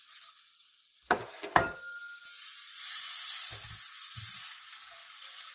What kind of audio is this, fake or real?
real